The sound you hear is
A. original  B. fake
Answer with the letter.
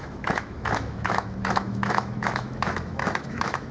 B